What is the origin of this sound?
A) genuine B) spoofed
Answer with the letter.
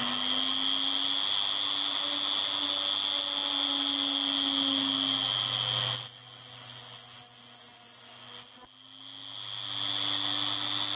A